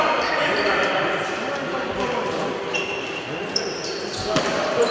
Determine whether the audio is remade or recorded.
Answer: remade